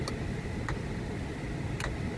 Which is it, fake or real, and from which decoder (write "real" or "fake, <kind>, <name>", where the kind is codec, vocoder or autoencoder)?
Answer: real